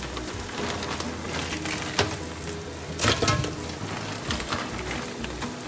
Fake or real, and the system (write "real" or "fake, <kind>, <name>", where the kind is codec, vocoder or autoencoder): real